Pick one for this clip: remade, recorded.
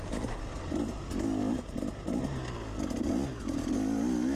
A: recorded